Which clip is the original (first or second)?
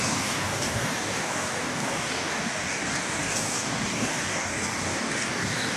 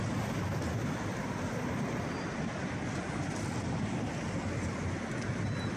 second